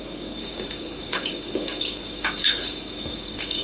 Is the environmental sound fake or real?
fake